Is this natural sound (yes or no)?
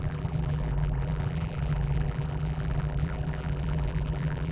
no